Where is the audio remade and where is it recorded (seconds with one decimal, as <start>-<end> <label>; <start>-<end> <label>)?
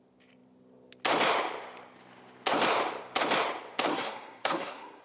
0.0-3.9 recorded; 3.9-5.0 remade